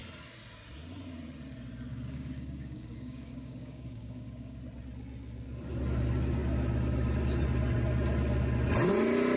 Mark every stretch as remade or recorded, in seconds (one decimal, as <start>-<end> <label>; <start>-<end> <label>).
0.0-1.9 recorded; 1.9-4.6 remade; 4.6-9.4 recorded